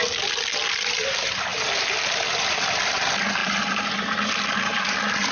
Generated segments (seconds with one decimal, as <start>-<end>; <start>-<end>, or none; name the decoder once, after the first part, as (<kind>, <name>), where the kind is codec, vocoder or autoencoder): 1.0-1.5 (vocoder, BigVGAN v2); 2.8-3.4; 4.6-5.3